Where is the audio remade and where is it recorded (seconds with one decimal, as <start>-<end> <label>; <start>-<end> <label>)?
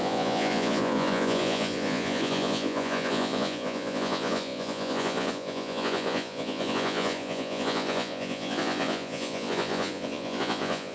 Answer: 0.0-10.9 remade